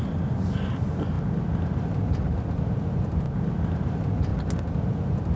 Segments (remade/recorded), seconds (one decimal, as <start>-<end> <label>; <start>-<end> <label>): 0.0-5.4 recorded